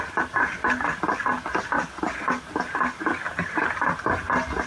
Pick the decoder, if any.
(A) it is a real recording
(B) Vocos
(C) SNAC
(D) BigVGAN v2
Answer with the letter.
A